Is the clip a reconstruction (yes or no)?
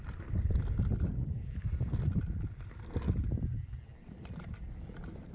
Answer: no